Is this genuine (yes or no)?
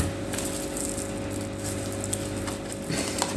yes